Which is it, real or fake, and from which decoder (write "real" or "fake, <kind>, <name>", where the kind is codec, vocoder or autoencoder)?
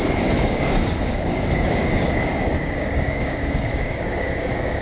fake, codec, DAC